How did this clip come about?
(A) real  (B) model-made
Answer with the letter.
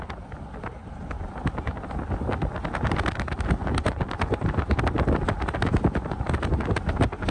A